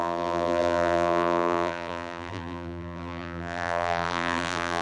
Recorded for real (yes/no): no